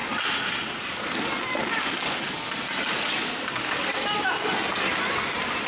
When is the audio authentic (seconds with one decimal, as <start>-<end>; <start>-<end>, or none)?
0.0-5.7